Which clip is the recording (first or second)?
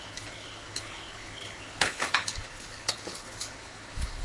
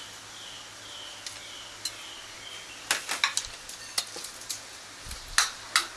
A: second